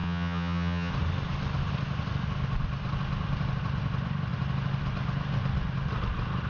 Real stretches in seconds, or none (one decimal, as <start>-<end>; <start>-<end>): 0.9-6.5